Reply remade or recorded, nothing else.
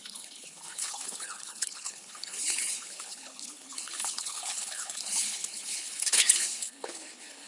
remade